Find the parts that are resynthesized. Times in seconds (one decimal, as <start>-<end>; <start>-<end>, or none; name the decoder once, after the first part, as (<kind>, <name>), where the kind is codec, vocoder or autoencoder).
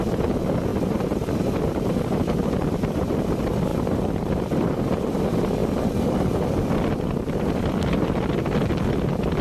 0.7-3.2 (vocoder, BigVGAN v2); 3.7-4.8